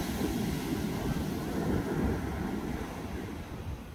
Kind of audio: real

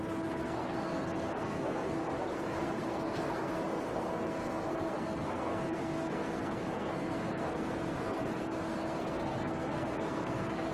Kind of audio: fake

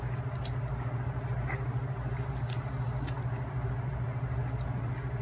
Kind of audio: real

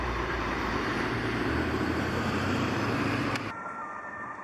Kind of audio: fake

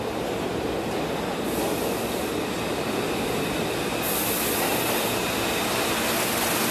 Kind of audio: real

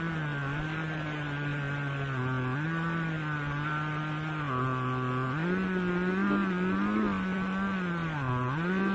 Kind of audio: real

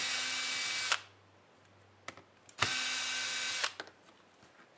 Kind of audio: real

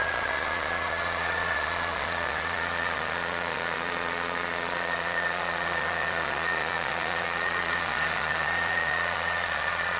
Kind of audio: fake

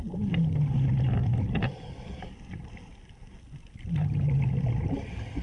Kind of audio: real